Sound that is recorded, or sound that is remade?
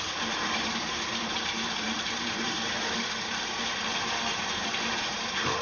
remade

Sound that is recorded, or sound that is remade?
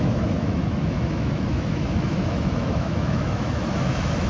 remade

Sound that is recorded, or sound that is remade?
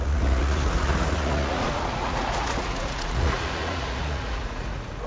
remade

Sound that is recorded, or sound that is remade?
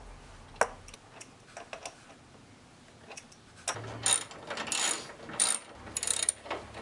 recorded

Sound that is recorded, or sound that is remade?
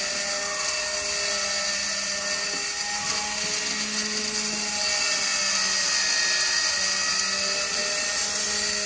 recorded